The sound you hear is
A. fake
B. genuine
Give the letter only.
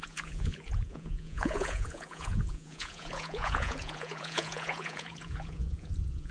A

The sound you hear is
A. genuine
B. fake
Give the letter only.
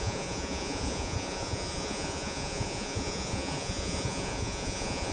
B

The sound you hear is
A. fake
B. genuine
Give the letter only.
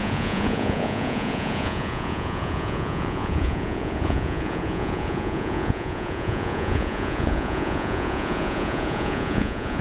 A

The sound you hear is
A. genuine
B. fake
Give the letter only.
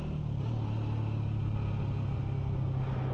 A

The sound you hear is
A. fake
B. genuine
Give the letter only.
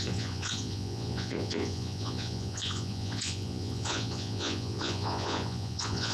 A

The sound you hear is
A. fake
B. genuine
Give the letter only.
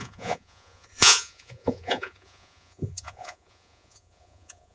A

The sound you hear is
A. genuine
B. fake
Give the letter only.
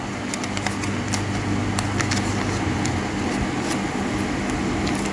A